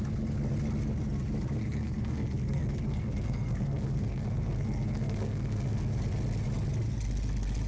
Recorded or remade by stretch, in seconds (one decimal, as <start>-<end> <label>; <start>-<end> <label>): 0.0-1.6 recorded; 1.6-6.1 remade; 6.1-7.7 recorded